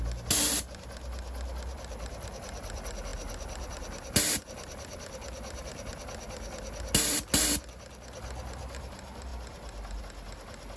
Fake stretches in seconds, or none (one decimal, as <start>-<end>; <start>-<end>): none